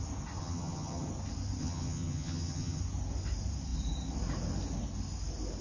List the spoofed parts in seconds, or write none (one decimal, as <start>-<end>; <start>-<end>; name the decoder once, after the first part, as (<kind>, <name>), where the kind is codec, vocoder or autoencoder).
0.4-1.1 (vocoder, HiFi-GAN); 1.6-2.8